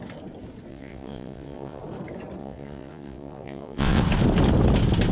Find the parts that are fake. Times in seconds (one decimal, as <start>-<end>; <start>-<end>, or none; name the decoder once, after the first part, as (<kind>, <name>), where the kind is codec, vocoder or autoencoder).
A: 0.7-1.8 (vocoder, WaveNeXt); 2.4-4.0